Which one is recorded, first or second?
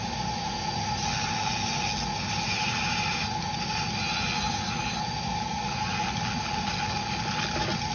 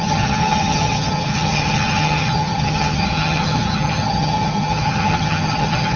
first